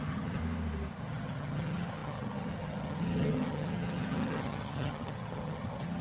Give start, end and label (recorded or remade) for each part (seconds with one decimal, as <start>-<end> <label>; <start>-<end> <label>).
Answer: 0.0-0.4 remade; 0.4-1.0 recorded; 1.0-6.0 remade